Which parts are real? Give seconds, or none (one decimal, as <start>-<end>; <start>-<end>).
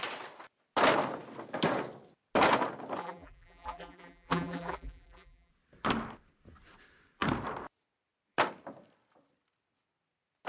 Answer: 0.0-3.0; 5.5-10.5